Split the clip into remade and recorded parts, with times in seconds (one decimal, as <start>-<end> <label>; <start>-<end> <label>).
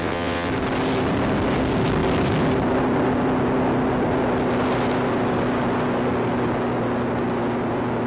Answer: 0.0-0.5 remade; 0.5-8.1 recorded